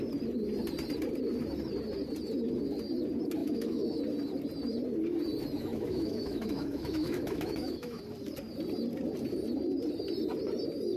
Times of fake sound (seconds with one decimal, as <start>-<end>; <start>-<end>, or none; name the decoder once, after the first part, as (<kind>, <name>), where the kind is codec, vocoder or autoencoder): 3.4-4.0 (autoencoder, DAC-VAE); 5.7-8.0